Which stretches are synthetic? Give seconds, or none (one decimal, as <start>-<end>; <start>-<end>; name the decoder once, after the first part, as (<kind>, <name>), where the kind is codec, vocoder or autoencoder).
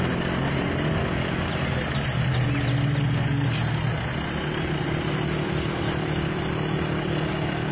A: 1.0-1.5 (codec, DAC)